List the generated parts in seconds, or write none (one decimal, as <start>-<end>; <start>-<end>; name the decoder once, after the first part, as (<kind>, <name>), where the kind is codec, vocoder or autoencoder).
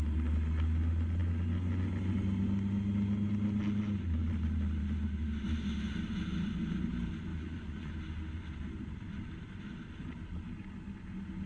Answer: 7.3-7.9 (vocoder, Vocos)